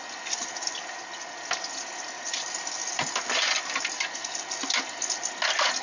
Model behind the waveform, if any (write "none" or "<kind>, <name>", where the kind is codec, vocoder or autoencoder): none